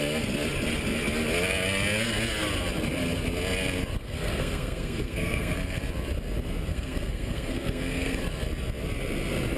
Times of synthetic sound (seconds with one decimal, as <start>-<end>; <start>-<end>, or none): 4.0-5.8; 6.7-8.2